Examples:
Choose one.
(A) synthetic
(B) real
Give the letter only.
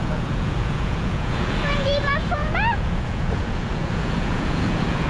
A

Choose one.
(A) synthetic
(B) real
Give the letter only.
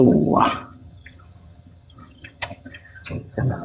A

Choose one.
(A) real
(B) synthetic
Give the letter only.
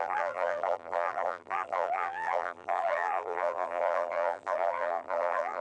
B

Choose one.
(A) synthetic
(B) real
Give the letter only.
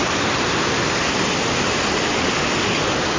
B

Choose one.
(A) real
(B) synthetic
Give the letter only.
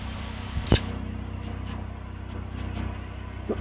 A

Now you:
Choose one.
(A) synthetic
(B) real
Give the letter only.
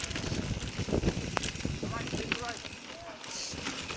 B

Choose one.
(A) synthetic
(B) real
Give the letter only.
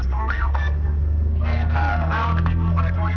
A